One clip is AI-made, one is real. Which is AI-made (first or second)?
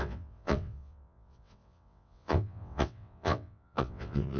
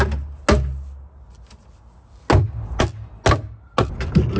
first